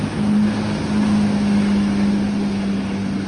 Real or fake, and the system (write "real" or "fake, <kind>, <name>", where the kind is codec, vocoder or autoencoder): real